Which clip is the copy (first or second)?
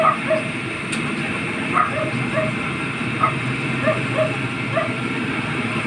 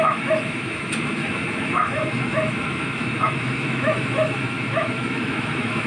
second